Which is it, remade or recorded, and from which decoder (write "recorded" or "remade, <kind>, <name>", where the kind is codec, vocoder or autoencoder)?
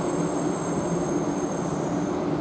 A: recorded